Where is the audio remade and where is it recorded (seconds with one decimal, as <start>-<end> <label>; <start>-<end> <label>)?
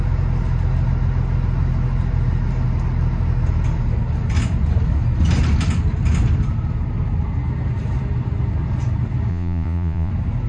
0.0-9.3 recorded; 9.3-10.1 remade; 10.1-10.5 recorded